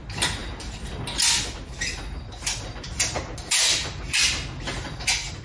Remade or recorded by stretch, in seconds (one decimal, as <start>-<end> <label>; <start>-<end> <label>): 0.0-5.4 recorded